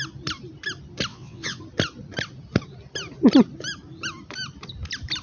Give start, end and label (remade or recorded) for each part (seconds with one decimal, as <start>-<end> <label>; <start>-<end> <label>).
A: 0.0-1.1 recorded; 1.1-1.6 remade; 1.6-5.2 recorded